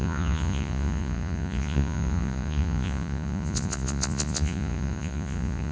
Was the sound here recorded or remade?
remade